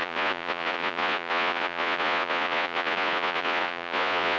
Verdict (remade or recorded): remade